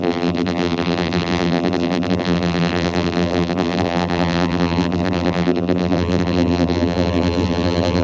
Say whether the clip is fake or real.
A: fake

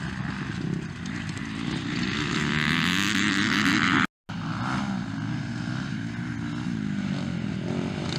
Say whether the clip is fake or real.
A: real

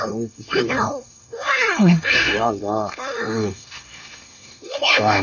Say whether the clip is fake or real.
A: fake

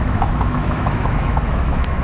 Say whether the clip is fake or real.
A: fake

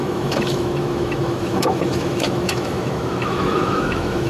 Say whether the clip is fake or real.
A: fake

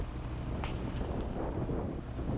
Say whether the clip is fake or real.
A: real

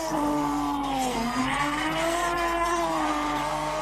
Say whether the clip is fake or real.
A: fake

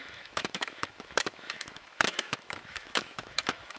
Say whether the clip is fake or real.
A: fake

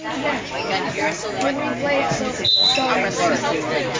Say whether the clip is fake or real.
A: real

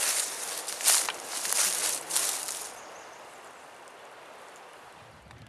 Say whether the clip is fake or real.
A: real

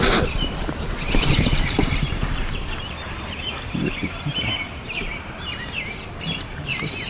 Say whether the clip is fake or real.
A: fake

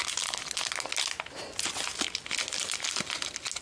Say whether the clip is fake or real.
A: real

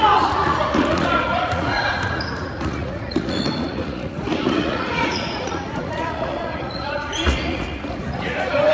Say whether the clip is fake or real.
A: fake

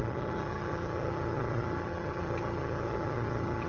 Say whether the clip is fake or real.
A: fake